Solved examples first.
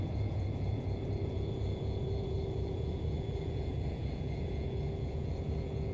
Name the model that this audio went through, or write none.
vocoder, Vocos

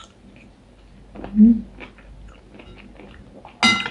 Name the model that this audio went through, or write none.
none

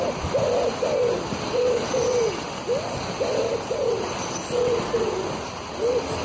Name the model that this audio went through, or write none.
none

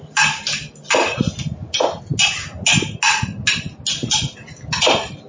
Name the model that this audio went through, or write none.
none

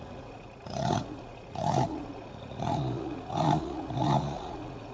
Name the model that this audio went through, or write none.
vocoder, Vocos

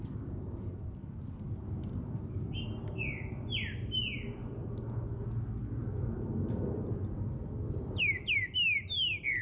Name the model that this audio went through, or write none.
none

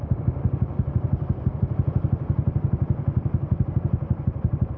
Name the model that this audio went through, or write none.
none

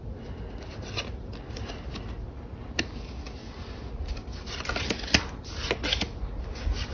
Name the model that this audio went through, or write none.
none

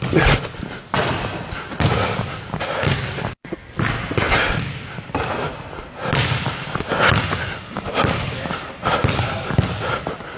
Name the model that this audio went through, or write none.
none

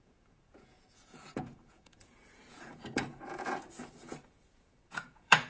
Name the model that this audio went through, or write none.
vocoder, Vocos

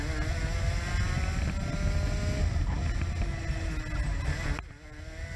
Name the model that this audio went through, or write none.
none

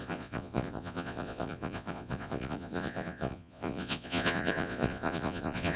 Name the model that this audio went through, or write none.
vocoder, Vocos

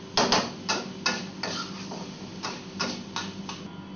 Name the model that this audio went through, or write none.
none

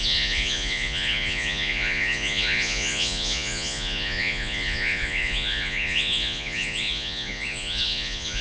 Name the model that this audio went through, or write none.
vocoder, Vocos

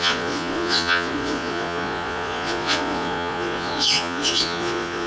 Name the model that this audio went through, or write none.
vocoder, Vocos